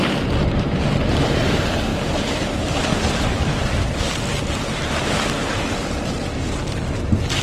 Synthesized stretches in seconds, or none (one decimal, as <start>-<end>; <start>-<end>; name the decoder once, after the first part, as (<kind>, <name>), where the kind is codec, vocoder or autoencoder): 0.0-0.8 (vocoder, BigVGAN v2); 1.9-4.5